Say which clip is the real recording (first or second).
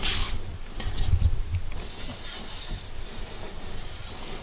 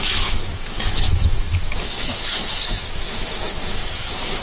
first